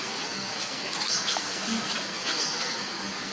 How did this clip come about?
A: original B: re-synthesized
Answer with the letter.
B